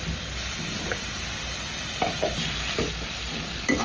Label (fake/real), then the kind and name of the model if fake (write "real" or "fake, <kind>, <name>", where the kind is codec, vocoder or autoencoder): real